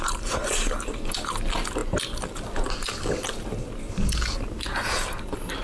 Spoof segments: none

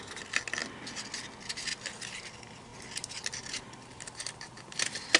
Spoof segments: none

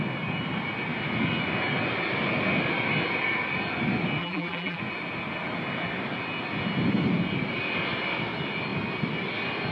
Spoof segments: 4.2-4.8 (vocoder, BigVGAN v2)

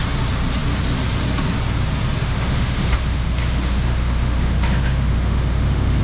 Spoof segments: 2.2-6.0 (autoencoder, DAC-VAE)